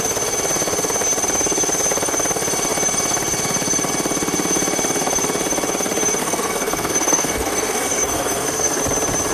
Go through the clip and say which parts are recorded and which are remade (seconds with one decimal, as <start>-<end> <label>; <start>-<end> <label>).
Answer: 0.0-6.2 recorded; 6.2-8.8 remade; 8.8-9.3 recorded